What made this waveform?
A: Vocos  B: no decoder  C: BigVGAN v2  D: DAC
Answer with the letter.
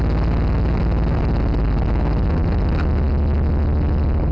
B